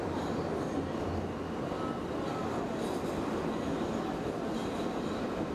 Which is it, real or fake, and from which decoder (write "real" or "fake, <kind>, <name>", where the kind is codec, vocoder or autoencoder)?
real